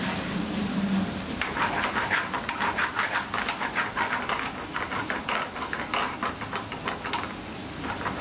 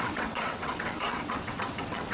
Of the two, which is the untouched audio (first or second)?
first